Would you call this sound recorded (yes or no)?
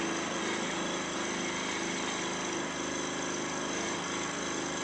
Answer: yes